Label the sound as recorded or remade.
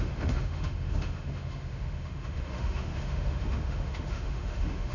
remade